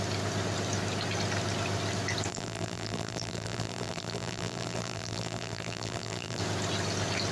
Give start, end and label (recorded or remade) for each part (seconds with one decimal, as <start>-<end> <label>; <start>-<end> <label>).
0.0-2.3 recorded; 2.3-6.4 remade; 6.4-7.3 recorded